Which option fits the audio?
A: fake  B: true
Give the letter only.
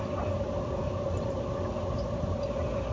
B